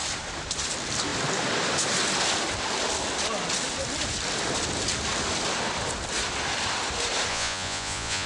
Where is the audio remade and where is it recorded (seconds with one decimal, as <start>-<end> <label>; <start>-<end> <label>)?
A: 0.0-7.3 recorded; 7.3-8.3 remade